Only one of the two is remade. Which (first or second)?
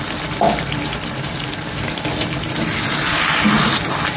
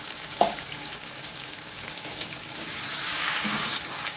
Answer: second